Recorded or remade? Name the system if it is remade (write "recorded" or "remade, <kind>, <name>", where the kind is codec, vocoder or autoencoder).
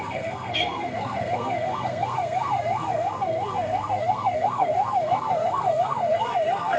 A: remade, codec, SNAC